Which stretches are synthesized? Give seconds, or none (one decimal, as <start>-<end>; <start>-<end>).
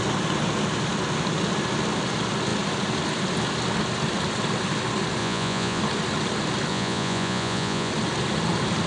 5.2-5.8; 6.7-7.9